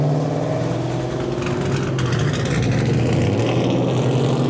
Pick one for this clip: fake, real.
real